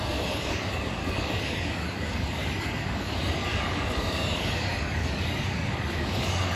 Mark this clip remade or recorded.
remade